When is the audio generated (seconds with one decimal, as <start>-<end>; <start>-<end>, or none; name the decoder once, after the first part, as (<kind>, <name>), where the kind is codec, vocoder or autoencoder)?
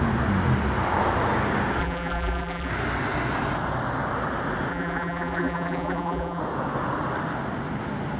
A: 1.8-2.7 (vocoder, BigVGAN v2); 4.7-6.4